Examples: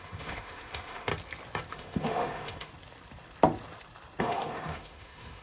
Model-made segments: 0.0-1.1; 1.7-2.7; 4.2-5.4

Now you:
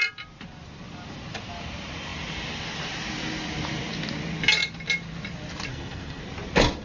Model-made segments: 5.7-6.2